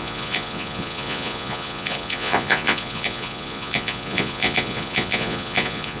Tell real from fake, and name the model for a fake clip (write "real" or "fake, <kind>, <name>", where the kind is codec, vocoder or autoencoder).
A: fake, vocoder, Vocos